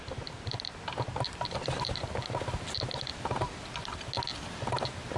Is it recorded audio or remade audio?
recorded